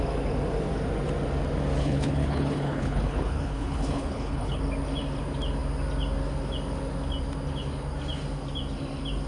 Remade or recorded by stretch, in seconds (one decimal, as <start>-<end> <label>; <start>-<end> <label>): 0.0-1.8 recorded; 1.8-4.6 remade; 4.6-9.3 recorded